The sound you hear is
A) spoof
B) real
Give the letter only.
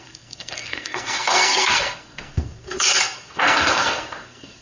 A